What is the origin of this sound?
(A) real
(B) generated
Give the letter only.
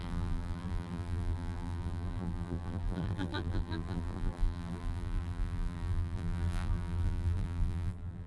B